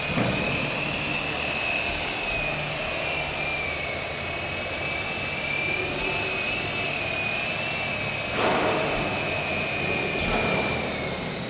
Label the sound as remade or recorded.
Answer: recorded